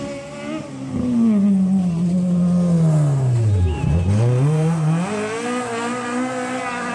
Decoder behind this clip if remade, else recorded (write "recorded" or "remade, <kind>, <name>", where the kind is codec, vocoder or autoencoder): recorded